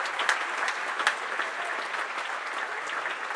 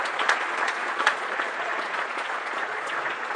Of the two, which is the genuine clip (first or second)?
first